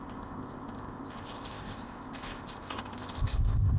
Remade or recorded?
remade